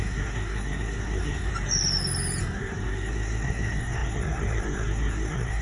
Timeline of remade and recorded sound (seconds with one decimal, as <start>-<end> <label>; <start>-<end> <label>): 0.0-1.5 remade; 1.5-2.4 recorded; 2.4-5.6 remade